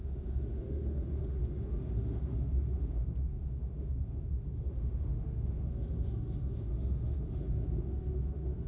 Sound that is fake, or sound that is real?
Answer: fake